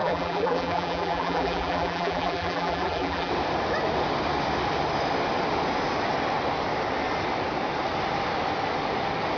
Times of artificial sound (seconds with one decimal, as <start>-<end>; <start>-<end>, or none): 0.0-3.3